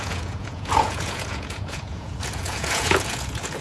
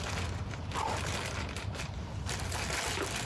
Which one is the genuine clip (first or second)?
second